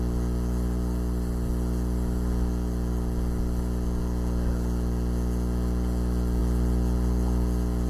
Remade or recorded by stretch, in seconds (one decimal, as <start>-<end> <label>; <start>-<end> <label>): 0.0-7.9 recorded